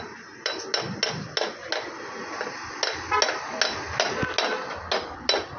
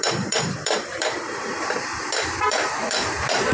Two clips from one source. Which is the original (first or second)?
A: first